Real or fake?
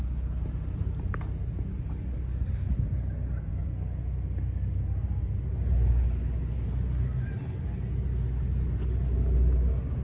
real